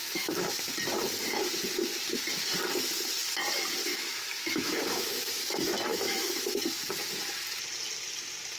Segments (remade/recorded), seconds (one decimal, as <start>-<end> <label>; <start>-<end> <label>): 0.0-0.6 remade; 0.6-3.9 recorded; 3.9-5.4 remade; 5.4-5.9 recorded; 5.9-6.8 remade; 6.8-8.6 recorded